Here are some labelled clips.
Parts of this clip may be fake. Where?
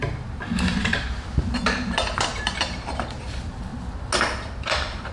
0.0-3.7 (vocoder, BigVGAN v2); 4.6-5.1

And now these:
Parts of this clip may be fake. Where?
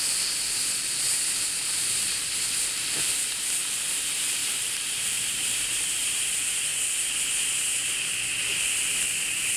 4.4-6.2 (vocoder, BigVGAN v2)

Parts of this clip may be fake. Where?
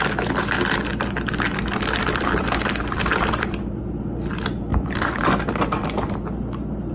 0.9-3.8 (vocoder, BigVGAN v2); 4.7-5.3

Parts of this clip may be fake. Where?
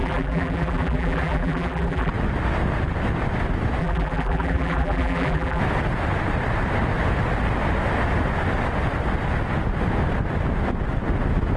0.0-2.1 (vocoder, BigVGAN v2); 3.8-5.6